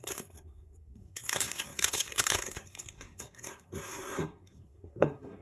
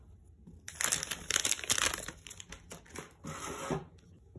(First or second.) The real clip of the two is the second